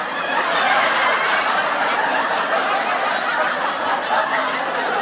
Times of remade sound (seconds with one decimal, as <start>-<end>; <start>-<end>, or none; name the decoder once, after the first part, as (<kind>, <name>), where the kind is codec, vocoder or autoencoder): 0.0-2.0 (vocoder, Vocos)